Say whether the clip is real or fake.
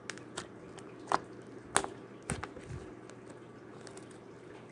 real